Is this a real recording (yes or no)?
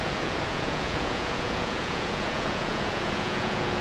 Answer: no